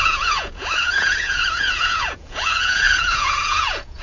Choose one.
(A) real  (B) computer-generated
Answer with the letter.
B